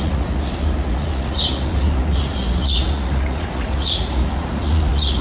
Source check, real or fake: fake